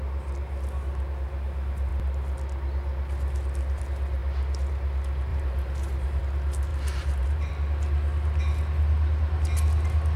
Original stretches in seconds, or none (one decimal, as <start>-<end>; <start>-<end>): 0.0-5.3; 6.2-6.7; 7.5-10.2